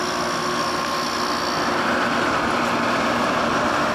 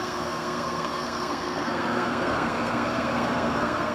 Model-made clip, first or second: second